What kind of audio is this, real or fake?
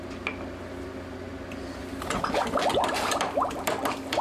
real